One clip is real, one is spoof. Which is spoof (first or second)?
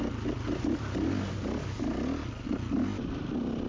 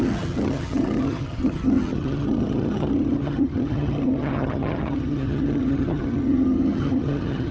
second